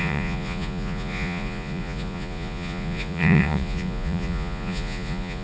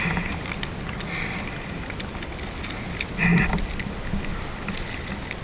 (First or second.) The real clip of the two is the second